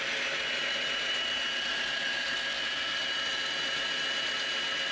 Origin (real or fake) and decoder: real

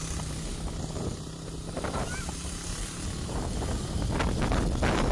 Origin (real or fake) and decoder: real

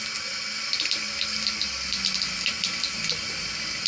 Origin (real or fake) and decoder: real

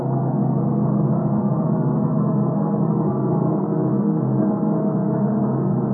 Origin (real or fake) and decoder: fake, codec, SNAC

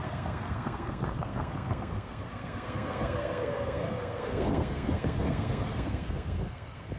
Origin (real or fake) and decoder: fake, codec, SNAC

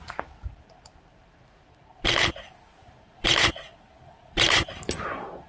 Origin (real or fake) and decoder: fake, vocoder, BigVGAN v2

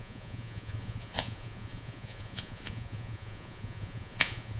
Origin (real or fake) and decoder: fake, vocoder, Vocos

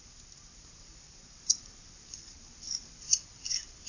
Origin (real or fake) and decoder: fake, vocoder, BigVGAN v2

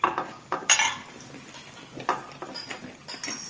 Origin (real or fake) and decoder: real